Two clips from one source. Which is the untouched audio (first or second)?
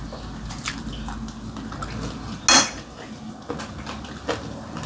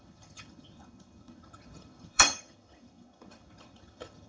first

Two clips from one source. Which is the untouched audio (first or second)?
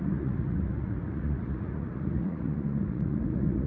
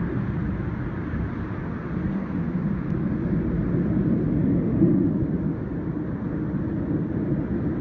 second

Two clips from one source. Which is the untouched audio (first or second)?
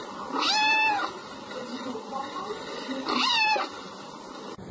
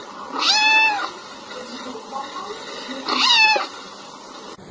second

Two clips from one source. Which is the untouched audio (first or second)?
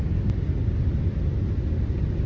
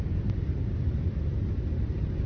first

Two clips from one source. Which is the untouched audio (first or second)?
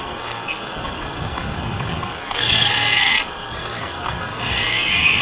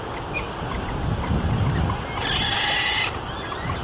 second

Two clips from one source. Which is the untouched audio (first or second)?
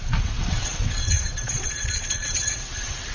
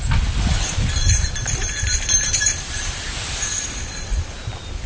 second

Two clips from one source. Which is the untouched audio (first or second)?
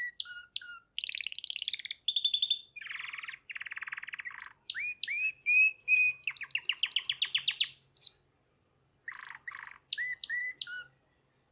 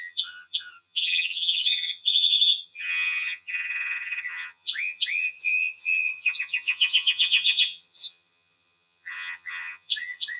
first